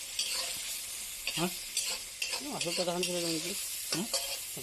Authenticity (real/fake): real